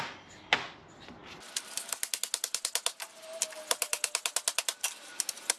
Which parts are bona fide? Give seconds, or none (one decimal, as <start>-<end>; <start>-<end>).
0.0-5.6